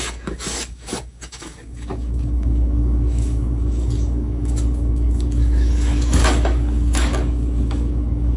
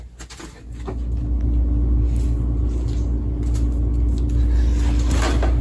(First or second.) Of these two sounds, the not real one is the first